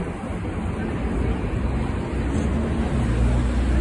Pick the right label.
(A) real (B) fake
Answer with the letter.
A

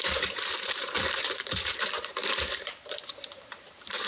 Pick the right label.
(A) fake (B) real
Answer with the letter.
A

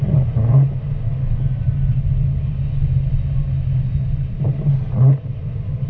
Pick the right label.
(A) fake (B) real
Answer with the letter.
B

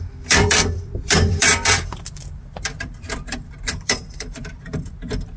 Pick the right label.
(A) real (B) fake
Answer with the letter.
B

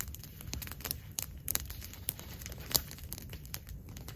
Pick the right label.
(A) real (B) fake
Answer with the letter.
B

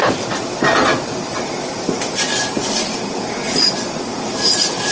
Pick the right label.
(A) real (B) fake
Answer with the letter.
B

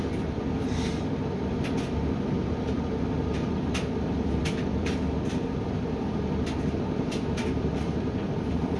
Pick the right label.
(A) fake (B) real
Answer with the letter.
A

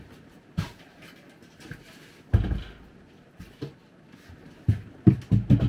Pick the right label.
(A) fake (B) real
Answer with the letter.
B